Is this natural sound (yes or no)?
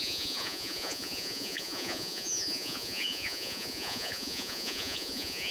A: no